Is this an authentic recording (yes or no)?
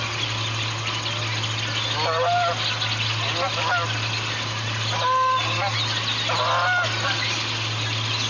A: yes